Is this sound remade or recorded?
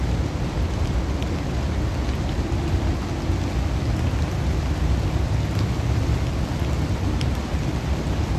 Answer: recorded